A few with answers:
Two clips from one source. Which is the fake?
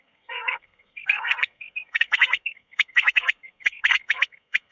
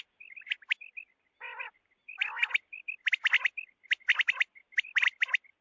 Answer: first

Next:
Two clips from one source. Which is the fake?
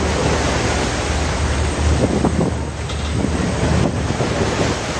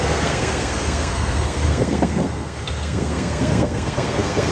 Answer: second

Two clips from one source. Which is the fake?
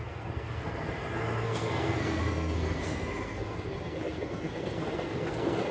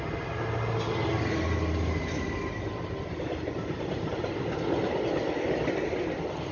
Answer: first